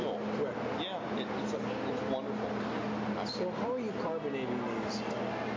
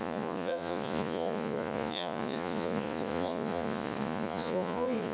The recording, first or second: first